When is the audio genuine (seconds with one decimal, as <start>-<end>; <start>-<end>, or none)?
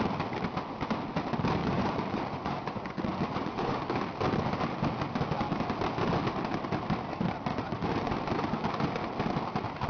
0.0-1.6; 3.8-7.5; 8.1-9.9